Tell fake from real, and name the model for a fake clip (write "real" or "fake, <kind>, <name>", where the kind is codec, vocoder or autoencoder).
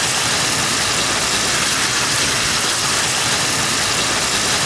real